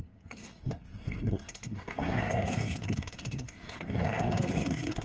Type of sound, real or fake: fake